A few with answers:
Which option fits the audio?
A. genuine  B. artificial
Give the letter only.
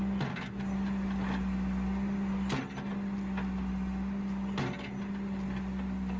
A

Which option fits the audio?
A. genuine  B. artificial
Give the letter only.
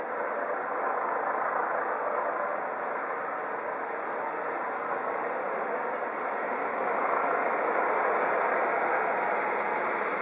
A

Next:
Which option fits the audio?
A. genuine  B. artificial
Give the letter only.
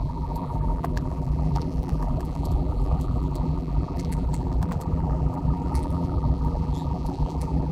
B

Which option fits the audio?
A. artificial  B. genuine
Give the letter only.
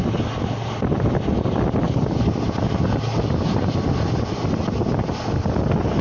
B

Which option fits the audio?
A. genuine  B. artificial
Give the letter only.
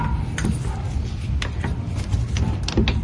A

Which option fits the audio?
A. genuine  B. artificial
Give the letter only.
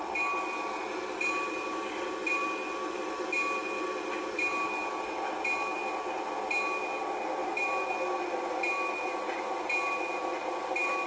A